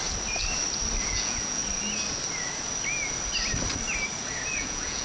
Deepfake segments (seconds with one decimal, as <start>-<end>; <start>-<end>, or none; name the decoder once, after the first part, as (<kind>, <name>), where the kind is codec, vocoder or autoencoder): 1.0-1.6 (vocoder, Vocos); 4.6-5.0